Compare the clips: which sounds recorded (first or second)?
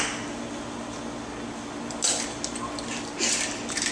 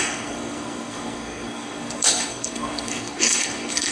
first